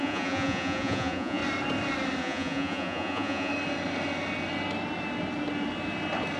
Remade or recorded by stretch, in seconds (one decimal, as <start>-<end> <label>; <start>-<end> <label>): 0.0-1.4 remade; 1.4-2.2 recorded; 2.2-3.5 remade; 3.5-6.4 recorded

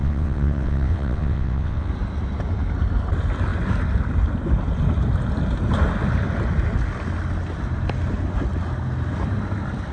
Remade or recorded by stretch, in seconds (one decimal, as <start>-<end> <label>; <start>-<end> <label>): 0.0-1.9 remade; 1.9-9.9 recorded

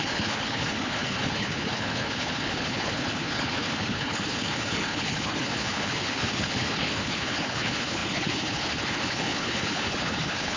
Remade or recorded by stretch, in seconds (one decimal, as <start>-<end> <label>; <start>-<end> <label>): 0.0-10.6 remade

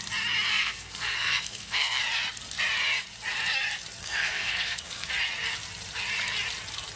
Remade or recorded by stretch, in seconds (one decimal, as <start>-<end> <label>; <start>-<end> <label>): 0.0-0.5 recorded; 0.5-2.0 remade; 2.0-4.0 recorded; 4.0-5.1 remade; 5.1-7.0 recorded

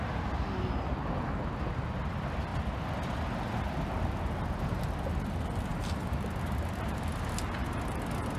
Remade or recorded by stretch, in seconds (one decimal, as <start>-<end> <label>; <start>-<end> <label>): 0.0-5.7 recorded; 5.7-7.8 remade; 7.8-8.4 recorded

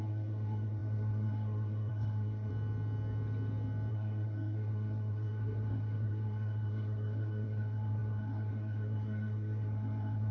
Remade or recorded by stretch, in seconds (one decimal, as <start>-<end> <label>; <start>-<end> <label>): 0.0-2.5 remade; 2.5-3.9 recorded; 3.9-10.3 remade

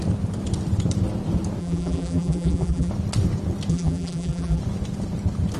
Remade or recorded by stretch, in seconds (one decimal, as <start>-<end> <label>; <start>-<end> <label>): 0.0-1.6 recorded; 1.6-2.9 remade; 2.9-3.7 recorded; 3.7-4.6 remade; 4.6-5.6 recorded